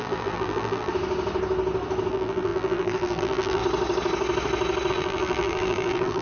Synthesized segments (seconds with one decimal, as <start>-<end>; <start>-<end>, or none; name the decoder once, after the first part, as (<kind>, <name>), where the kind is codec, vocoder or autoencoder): 0.0-0.9 (vocoder, BigVGAN v2); 2.1-3.6; 4.9-6.2